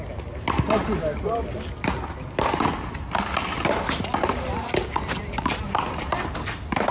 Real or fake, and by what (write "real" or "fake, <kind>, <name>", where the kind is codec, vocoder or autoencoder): real